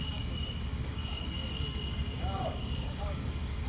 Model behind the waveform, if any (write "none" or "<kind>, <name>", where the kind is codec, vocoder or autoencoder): codec, DAC